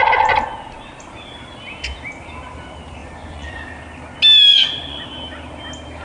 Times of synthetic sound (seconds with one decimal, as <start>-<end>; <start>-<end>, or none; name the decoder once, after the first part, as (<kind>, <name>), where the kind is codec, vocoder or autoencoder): 3.0-3.6 (vocoder, Vocos); 4.5-5.0